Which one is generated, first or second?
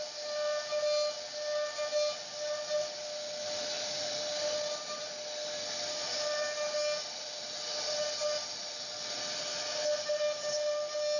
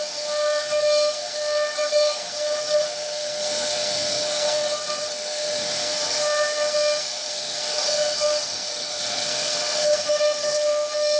second